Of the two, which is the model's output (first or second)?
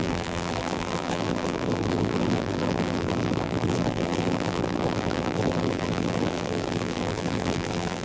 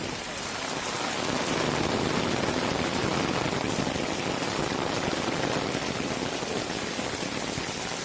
first